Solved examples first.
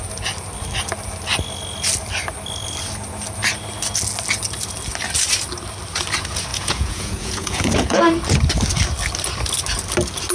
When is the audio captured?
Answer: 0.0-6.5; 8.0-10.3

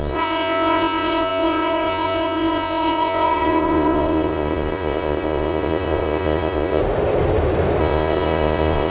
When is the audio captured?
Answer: 6.8-7.8

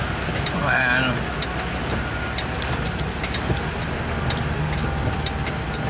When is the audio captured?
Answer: 0.0-5.9

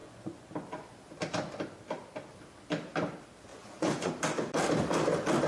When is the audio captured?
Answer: 0.5-3.5; 4.1-5.5

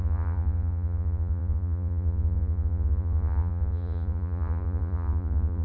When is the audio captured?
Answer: none